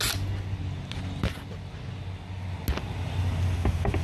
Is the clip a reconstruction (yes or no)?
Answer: no